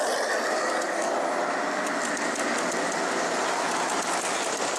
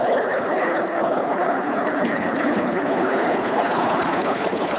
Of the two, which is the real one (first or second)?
first